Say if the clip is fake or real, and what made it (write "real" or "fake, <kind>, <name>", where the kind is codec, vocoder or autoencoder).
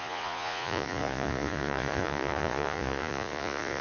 fake, vocoder, Vocos